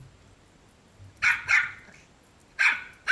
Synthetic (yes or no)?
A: no